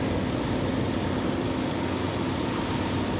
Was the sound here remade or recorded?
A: recorded